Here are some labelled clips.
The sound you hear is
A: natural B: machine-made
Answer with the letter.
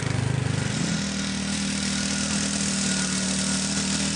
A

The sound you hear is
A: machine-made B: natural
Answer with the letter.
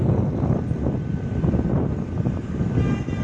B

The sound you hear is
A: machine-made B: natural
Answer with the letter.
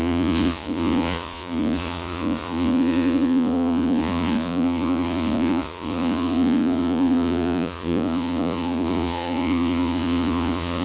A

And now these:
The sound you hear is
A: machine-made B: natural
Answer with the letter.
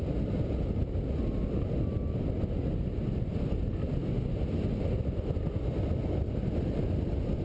B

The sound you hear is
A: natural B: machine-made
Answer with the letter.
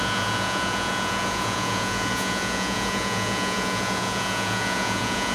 B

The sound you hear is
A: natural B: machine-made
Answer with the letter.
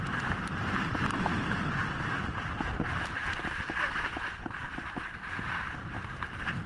A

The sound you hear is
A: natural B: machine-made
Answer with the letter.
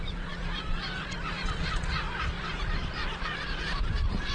B